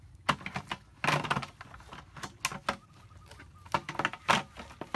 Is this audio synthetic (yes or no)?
no